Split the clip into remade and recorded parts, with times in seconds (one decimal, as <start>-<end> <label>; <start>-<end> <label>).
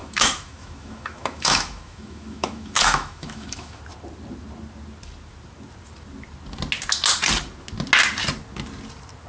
0.0-3.8 remade; 3.8-9.3 recorded